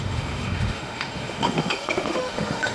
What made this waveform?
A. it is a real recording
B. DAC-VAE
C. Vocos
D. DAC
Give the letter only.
B